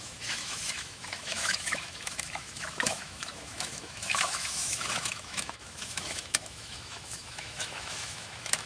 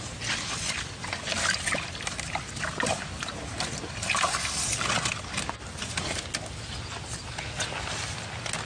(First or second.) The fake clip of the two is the first